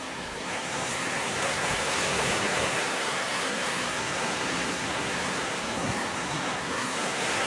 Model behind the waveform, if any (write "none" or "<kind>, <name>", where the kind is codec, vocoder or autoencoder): codec, SNAC